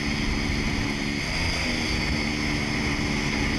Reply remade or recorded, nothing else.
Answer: recorded